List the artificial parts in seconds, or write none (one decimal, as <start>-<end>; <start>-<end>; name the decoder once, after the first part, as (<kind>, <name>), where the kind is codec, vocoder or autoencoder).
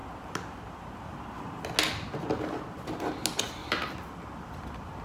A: 3.6-5.0 (vocoder, BigVGAN v2)